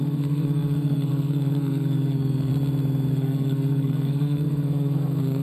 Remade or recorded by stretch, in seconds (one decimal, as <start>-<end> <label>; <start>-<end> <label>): 0.0-2.5 remade; 2.5-3.1 recorded; 3.1-5.4 remade